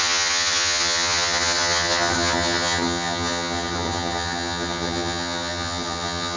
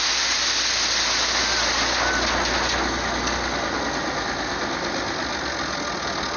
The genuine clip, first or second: second